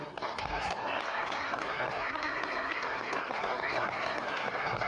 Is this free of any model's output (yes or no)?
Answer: no